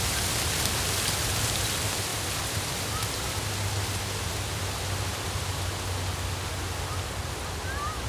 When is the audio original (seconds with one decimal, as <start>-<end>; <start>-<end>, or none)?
0.0-8.1